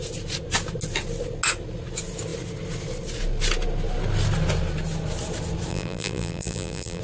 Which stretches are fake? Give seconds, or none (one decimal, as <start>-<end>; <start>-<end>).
5.7-7.0

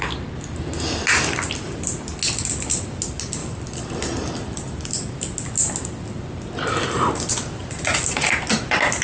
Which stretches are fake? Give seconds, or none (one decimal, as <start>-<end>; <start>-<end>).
3.4-5.1

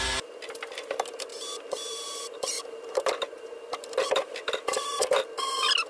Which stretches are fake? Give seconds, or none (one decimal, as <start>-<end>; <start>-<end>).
1.3-4.8

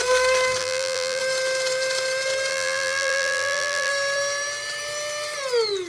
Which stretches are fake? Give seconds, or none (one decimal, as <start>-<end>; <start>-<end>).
0.6-1.2; 2.5-3.9

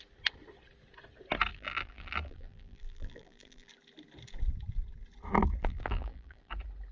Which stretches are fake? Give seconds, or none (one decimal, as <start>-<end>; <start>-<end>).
1.5-3.7; 5.4-6.5

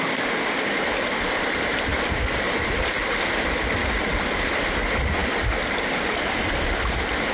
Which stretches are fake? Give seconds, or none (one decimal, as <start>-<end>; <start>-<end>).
1.9-2.8

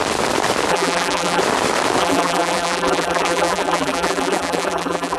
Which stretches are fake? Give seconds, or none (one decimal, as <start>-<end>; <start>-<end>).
0.7-1.4; 2.0-5.2